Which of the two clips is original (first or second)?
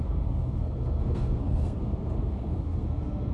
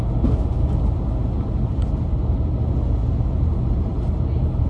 second